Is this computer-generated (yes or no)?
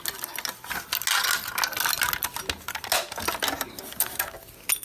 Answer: no